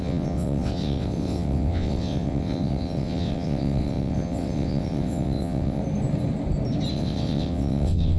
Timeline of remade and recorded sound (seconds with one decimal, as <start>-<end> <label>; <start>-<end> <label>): 0.0-5.8 remade; 5.8-6.9 recorded; 6.9-8.2 remade